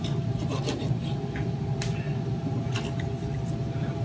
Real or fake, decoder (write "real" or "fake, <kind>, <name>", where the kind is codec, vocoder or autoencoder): real